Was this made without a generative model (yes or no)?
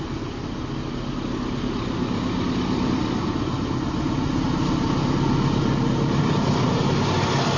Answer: yes